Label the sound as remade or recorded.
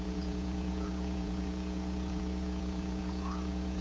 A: remade